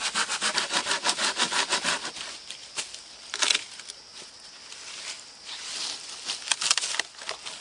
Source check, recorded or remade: recorded